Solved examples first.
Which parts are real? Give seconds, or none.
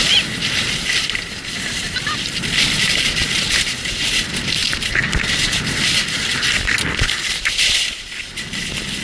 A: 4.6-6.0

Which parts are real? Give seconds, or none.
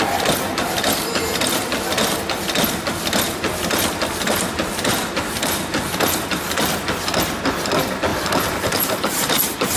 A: 0.0-0.5; 1.5-5.0; 6.6-8.1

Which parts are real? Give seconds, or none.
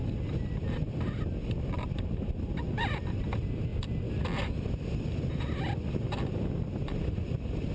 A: 0.0-1.4; 2.0-7.7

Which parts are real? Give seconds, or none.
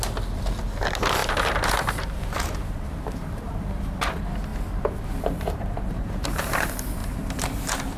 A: 0.0-1.2; 4.0-4.5; 6.6-7.0; 7.6-8.0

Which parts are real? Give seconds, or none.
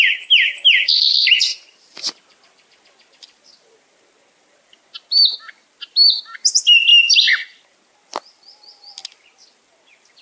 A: 0.0-10.2